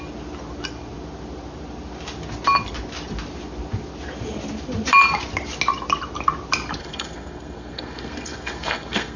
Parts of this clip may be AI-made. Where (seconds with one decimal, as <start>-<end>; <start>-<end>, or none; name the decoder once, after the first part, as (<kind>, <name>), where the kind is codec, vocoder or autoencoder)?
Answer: 6.8-9.2 (codec, SNAC)